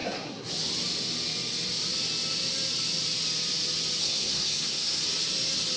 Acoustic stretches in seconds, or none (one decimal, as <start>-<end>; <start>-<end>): 0.5-4.0; 5.0-5.8